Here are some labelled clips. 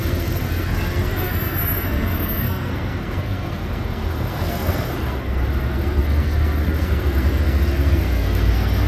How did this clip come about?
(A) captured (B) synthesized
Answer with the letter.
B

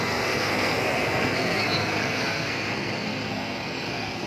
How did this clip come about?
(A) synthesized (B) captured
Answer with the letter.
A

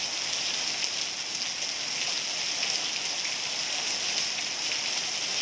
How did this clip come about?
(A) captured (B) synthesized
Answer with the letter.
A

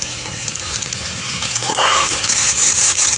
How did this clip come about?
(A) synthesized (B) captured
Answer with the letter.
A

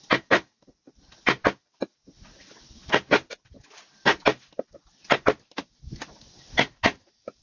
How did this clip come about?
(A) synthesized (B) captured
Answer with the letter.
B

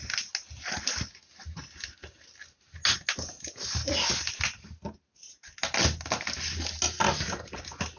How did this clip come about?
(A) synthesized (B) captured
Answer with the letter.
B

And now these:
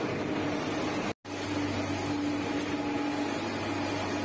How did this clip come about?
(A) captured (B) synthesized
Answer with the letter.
A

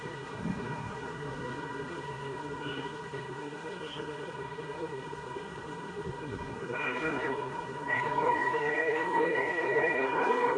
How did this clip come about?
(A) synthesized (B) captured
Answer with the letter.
A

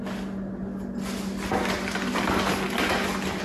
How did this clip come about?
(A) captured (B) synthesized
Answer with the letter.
A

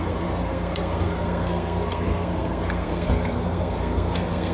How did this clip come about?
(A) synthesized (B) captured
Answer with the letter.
A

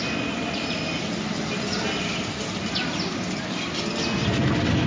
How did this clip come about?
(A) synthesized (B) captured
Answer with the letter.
B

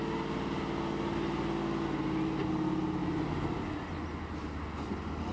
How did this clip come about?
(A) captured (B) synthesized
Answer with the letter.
A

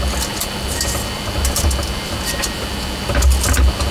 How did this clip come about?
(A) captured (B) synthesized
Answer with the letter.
A